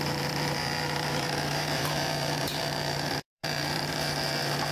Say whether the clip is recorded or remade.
remade